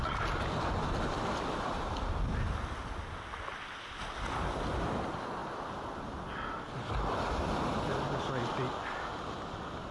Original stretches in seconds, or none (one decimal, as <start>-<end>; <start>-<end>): 0.0-9.9

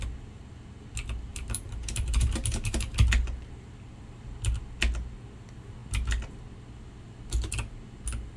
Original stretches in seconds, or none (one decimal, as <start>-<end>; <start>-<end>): 0.0-1.3; 4.2-8.4

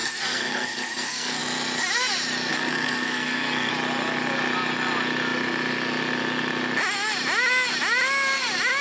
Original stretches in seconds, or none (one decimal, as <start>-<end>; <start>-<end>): 1.4-2.5; 3.7-8.8

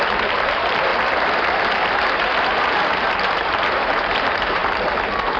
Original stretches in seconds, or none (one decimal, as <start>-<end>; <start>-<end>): 0.9-3.0; 4.6-5.4